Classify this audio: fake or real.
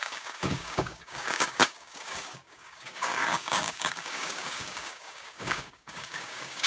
fake